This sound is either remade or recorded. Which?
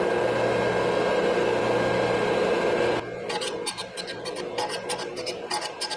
recorded